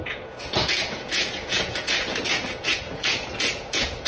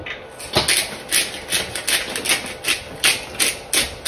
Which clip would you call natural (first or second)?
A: second